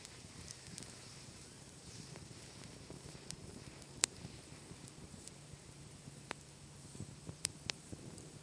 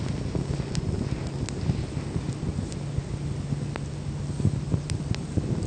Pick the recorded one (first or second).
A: second